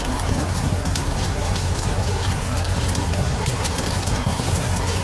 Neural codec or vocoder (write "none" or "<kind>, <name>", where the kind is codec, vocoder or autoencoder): codec, SNAC